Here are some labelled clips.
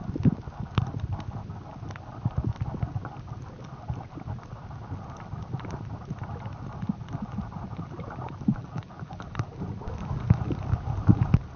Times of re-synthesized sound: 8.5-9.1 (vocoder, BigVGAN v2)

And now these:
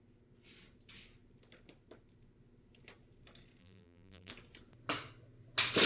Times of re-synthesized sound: 3.6-4.3 (vocoder, BigVGAN v2)

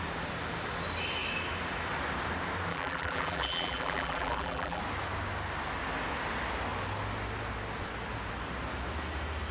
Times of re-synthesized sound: 2.7-4.8 (vocoder, BigVGAN v2)

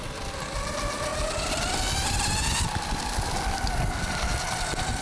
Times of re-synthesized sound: none